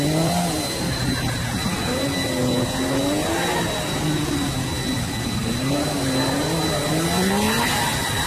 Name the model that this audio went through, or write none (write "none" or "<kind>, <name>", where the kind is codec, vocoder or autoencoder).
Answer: none